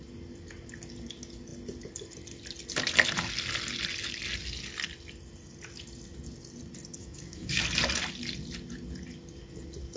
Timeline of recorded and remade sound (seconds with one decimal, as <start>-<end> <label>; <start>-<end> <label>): 0.0-7.0 recorded; 7.0-7.6 remade; 7.6-10.0 recorded